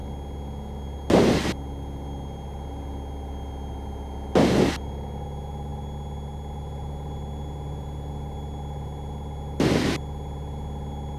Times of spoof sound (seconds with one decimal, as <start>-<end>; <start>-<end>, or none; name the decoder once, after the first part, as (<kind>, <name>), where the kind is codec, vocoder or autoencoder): none